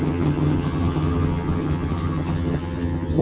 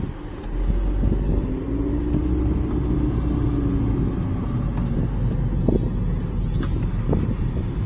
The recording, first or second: second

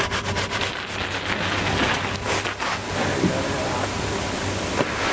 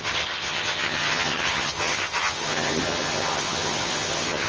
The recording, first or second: first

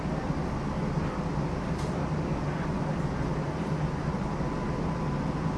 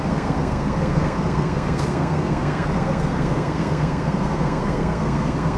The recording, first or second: first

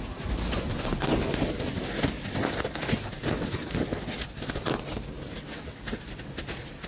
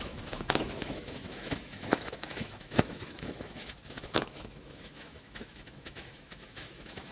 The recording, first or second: first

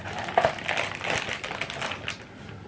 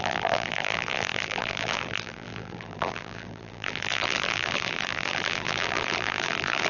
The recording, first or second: first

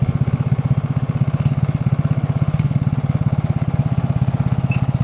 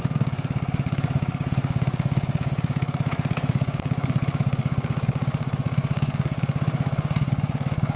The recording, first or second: first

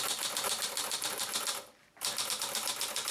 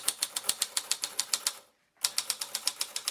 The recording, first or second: second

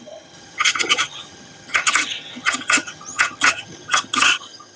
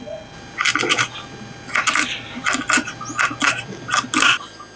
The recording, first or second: second